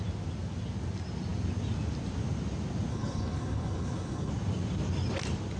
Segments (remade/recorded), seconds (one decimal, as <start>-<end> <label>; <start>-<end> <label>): 0.0-2.9 recorded; 2.9-4.3 remade; 4.3-5.6 recorded